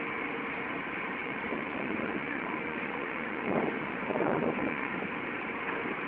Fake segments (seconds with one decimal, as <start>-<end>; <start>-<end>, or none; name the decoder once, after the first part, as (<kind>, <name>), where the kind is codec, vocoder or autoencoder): 1.2-4.9 (vocoder, Vocos)